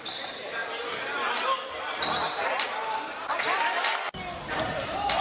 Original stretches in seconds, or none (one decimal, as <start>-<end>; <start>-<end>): 0.0-5.2